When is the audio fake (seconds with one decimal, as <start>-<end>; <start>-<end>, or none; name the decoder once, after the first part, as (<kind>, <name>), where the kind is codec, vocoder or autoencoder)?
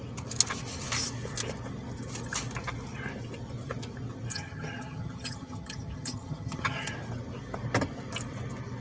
4.3-6.9 (vocoder, HiFi-GAN)